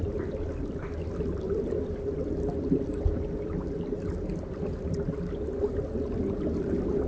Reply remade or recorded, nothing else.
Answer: recorded